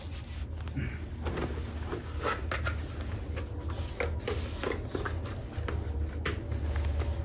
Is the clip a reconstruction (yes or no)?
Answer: no